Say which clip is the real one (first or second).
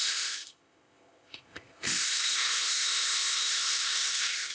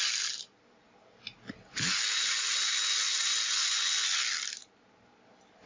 second